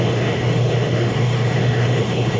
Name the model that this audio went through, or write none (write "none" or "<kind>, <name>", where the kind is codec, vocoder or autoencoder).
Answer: autoencoder, DAC-VAE